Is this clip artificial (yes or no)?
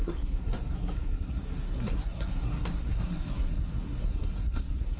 yes